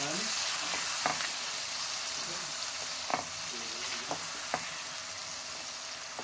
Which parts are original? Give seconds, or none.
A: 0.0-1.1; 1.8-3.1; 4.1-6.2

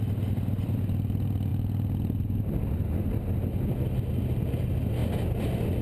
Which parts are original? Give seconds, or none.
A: 0.0-5.8

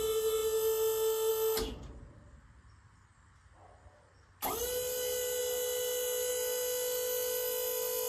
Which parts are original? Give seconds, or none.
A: 0.0-8.1

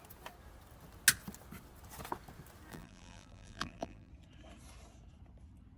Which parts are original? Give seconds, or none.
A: 0.0-2.7; 4.1-5.8

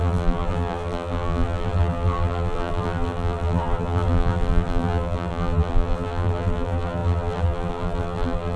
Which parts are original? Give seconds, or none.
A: none